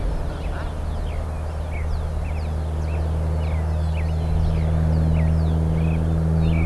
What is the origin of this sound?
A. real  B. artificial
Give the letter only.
A